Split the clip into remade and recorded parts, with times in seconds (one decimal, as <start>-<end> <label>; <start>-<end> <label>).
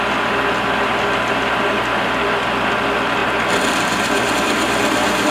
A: 0.0-3.2 recorded; 3.2-4.3 remade; 4.3-5.3 recorded